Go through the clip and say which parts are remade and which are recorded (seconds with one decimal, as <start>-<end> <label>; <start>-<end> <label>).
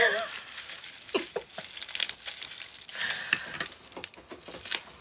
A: 0.0-5.0 recorded